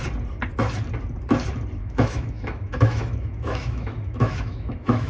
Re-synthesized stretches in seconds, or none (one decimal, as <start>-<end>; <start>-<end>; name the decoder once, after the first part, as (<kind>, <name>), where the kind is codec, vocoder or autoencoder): 1.8-5.1 (autoencoder, DAC-VAE)